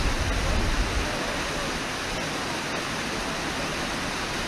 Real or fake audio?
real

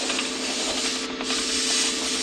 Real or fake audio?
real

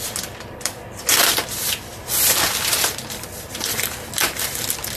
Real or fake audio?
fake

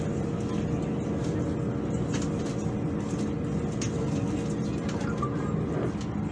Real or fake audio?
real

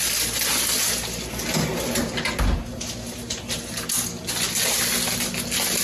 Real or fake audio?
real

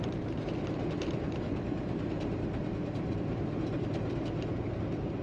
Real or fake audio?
fake